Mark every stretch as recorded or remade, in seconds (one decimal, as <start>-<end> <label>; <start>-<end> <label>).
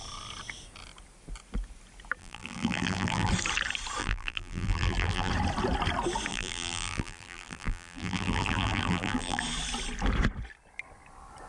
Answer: 0.0-2.2 recorded; 2.2-3.3 remade; 3.3-4.0 recorded; 4.0-5.3 remade; 5.3-6.3 recorded; 6.3-9.4 remade; 9.4-11.5 recorded